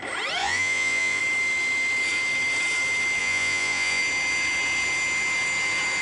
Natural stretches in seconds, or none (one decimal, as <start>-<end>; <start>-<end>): 0.0-0.4; 1.2-3.2; 4.0-6.0